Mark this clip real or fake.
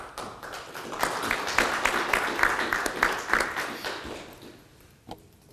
real